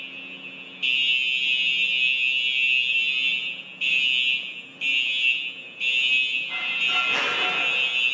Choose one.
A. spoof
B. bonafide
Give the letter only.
B